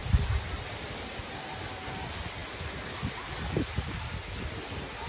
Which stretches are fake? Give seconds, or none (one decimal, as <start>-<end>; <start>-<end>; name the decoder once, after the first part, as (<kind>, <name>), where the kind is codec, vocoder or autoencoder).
none